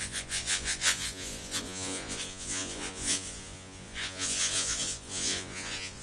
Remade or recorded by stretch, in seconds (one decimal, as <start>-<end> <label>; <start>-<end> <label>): 0.0-6.0 remade